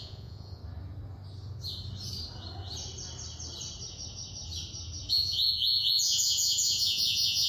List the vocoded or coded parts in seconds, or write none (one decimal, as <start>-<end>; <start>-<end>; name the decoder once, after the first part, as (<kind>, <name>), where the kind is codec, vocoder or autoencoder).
0.0-0.6 (vocoder, Vocos); 5.1-7.5